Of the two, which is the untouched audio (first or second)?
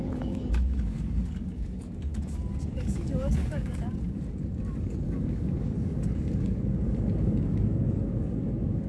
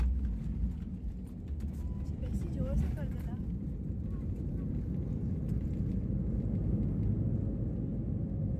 second